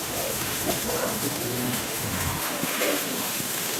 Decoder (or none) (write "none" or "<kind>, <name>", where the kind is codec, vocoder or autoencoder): autoencoder, DAC-VAE